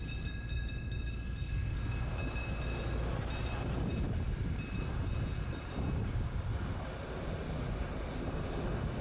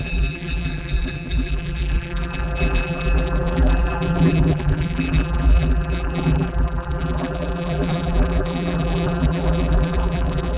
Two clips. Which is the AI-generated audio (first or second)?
second